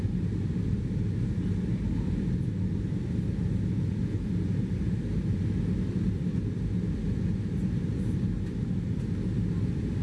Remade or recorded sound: recorded